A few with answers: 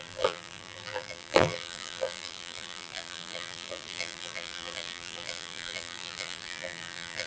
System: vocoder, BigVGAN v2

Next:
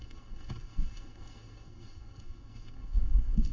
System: codec, SNAC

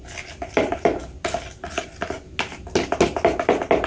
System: none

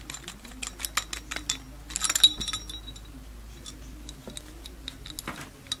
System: none